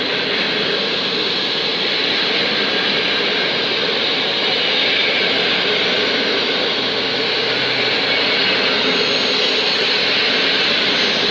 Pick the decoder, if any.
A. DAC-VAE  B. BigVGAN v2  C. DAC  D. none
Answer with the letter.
D